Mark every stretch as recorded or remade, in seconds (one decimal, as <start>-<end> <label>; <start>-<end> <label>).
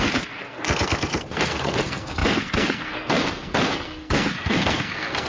0.0-5.3 remade